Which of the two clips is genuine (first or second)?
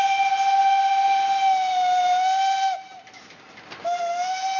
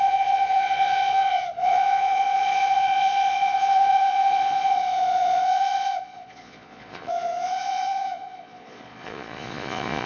first